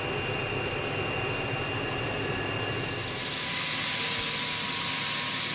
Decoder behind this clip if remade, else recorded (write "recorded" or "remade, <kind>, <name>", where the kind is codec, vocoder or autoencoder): recorded